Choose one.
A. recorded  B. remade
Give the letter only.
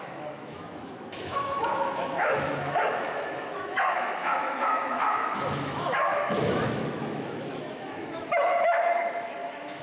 B